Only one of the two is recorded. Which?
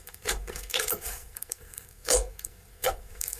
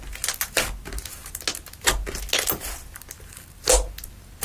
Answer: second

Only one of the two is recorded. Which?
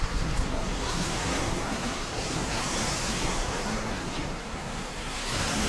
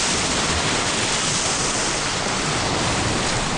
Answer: second